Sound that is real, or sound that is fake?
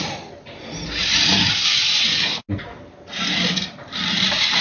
real